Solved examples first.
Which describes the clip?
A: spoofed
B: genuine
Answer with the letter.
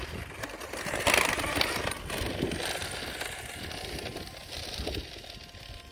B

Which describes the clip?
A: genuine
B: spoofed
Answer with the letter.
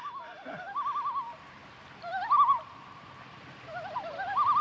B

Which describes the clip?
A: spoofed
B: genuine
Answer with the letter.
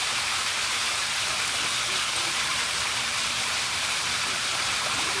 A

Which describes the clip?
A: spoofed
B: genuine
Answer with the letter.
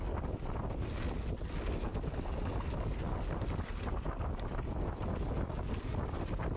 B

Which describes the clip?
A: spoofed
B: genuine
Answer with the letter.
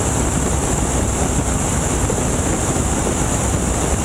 B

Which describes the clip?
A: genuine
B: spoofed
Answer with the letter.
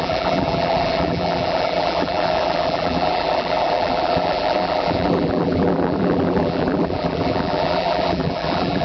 B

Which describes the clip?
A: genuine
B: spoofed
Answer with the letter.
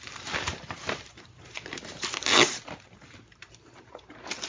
B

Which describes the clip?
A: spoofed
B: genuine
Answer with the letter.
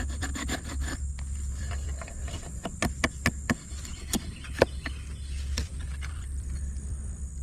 A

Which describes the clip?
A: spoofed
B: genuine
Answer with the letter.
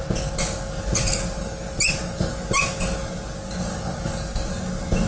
B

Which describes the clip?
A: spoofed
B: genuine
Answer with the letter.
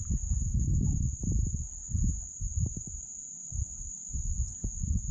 B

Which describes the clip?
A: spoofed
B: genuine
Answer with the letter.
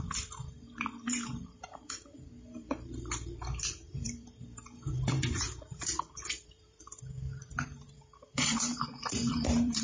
A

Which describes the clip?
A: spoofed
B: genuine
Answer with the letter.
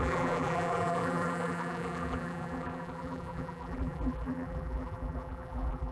A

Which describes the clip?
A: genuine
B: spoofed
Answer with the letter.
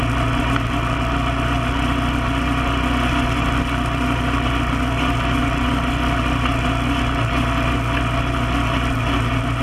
A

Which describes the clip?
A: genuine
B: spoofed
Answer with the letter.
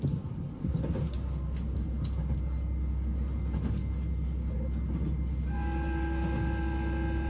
A